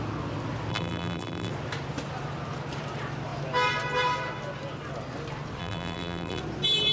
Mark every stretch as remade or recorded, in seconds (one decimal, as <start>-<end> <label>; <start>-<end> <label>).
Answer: 0.0-0.7 recorded; 0.7-1.5 remade; 1.5-5.6 recorded; 5.6-6.4 remade; 6.4-6.9 recorded